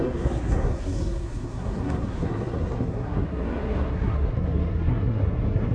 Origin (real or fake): fake